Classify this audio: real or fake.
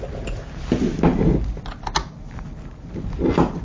real